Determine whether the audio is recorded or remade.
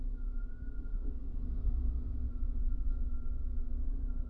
recorded